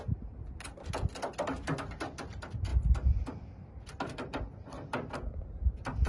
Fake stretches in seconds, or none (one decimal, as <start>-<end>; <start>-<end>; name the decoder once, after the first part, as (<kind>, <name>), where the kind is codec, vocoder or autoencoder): 2.7-6.1 (vocoder, BigVGAN v2)